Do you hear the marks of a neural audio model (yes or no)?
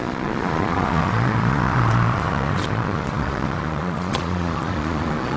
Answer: yes